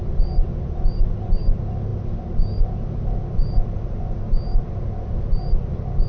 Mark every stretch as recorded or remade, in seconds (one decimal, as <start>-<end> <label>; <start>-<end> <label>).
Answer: 0.0-6.1 recorded